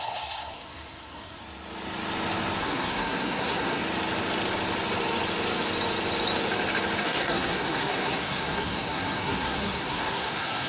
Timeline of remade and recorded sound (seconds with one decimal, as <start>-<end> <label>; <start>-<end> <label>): 0.0-1.4 remade; 1.4-2.6 recorded; 2.6-3.8 remade; 3.8-7.0 recorded; 7.0-10.7 remade